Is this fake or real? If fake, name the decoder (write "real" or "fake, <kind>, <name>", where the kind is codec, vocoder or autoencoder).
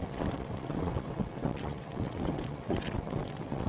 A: fake, vocoder, WaveNeXt